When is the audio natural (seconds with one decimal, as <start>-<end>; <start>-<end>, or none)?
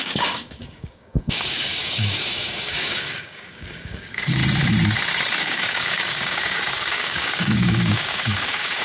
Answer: 4.4-5.4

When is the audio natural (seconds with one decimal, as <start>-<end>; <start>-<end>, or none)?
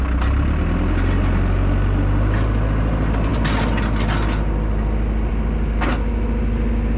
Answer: 0.0-7.0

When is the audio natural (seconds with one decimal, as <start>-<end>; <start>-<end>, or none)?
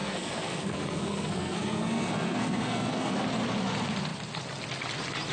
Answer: 3.2-5.3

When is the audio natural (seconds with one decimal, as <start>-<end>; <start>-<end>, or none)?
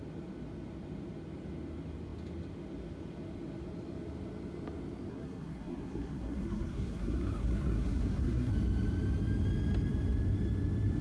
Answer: 0.0-5.1; 8.5-11.0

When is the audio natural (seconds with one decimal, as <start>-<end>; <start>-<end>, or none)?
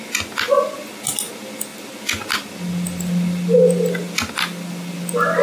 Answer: 0.0-5.4